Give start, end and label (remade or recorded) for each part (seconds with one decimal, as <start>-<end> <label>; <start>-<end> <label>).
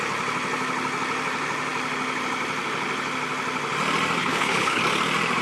0.0-4.2 recorded; 4.2-4.8 remade; 4.8-5.4 recorded